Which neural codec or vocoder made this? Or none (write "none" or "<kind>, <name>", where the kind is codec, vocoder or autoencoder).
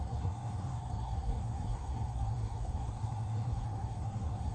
codec, SNAC